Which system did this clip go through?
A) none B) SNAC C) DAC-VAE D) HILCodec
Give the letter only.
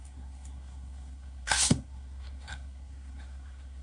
B